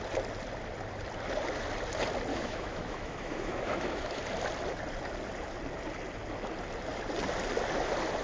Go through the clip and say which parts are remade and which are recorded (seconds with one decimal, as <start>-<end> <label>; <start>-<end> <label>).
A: 0.0-2.3 recorded; 2.3-4.2 remade; 4.2-8.2 recorded